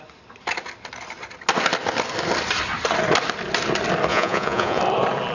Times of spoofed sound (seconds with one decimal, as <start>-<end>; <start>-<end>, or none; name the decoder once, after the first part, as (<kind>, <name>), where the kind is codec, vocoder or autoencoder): 4.1-4.8 (vocoder, Vocos)